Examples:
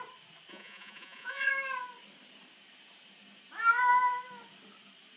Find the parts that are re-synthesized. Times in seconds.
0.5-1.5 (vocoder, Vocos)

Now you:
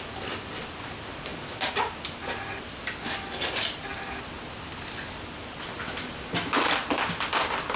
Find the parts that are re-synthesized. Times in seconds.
none